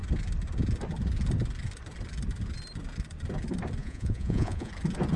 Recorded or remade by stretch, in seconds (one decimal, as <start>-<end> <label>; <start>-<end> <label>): 0.0-3.8 recorded; 3.8-4.7 remade; 4.7-5.2 recorded